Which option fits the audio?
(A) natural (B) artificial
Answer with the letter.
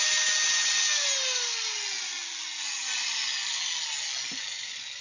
A